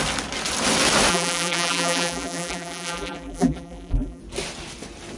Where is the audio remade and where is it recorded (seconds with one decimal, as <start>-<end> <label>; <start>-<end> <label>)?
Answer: 0.0-1.1 recorded; 1.1-4.2 remade; 4.2-5.2 recorded